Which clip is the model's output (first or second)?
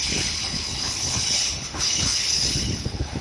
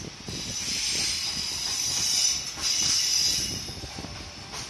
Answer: first